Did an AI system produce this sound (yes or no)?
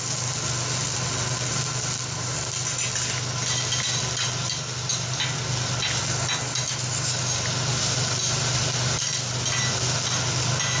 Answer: no